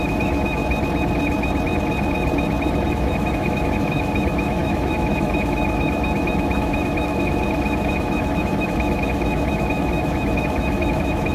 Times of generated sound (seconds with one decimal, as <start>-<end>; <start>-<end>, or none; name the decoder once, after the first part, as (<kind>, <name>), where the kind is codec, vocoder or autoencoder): 0.0-0.6 (autoencoder, DAC-VAE); 2.9-11.3